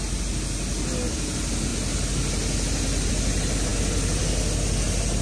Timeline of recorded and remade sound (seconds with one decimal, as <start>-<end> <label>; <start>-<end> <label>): 0.0-5.2 recorded